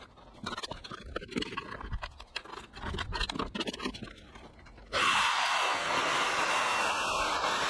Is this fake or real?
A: real